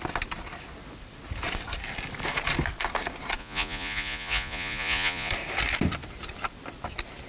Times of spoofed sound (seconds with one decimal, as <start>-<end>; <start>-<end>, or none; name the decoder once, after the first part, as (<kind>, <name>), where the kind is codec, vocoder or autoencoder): 3.4-5.3 (vocoder, Vocos)